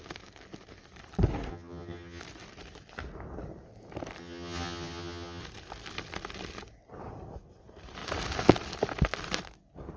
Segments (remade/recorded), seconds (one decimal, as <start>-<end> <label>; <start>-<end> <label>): 0.0-1.5 recorded; 1.5-2.2 remade; 2.2-4.2 recorded; 4.2-5.4 remade; 5.4-10.0 recorded